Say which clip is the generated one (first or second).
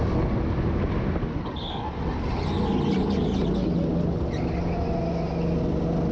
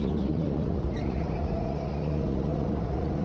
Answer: second